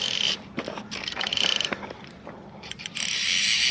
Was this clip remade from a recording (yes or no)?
no